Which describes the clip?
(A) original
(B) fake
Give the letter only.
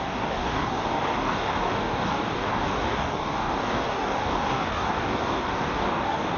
B